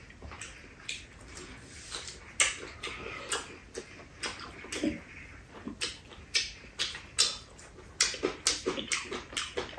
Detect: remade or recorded recorded